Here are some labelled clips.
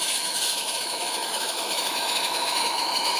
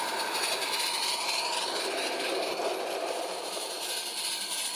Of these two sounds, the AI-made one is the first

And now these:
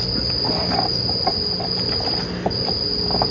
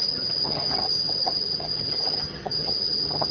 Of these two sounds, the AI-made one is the second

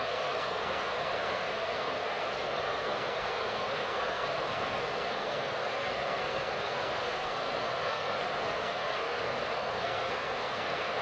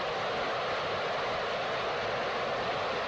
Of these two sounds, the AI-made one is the first